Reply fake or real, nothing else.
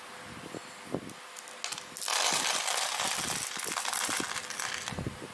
real